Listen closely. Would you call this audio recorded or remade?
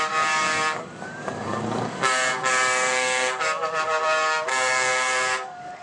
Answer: remade